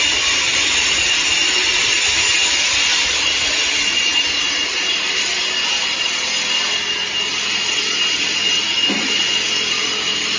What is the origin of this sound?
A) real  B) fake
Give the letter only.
A